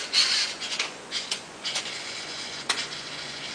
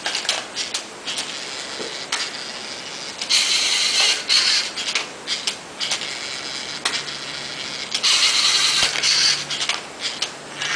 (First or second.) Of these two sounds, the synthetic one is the first